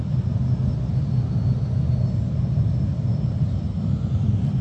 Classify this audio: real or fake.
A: real